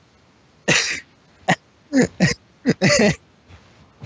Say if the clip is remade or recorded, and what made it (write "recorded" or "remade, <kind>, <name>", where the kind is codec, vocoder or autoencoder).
recorded